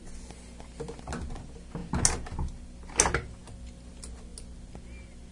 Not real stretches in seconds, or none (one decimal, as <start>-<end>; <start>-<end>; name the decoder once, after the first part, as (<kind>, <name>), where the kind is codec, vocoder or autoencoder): none